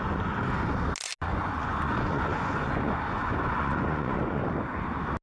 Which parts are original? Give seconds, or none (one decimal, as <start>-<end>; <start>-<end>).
0.0-1.3; 4.4-5.2